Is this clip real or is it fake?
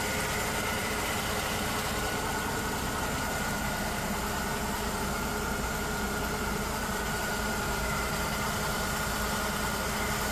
real